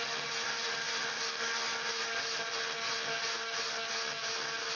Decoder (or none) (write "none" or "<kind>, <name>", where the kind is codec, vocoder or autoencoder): none